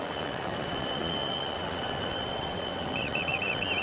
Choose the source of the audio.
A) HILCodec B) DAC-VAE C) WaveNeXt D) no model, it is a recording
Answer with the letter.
C